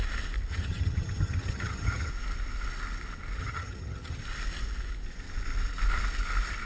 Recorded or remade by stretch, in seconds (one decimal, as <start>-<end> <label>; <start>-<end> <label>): 0.0-0.5 recorded; 0.5-2.1 remade; 2.1-3.4 recorded; 3.4-4.2 remade; 4.2-6.7 recorded